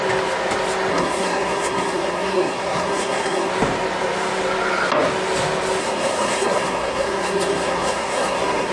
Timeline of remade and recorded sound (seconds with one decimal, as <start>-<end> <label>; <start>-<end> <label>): 0.0-0.9 recorded; 0.9-3.5 remade; 3.5-5.8 recorded; 5.8-8.7 remade